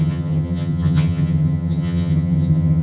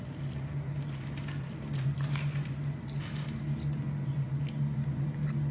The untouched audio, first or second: second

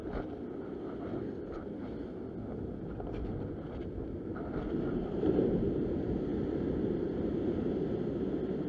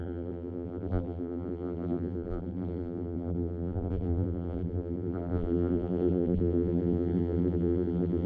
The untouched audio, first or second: first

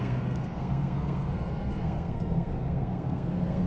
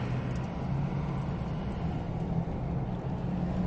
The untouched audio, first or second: second